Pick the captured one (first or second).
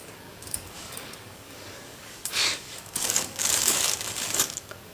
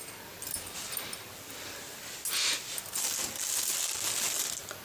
second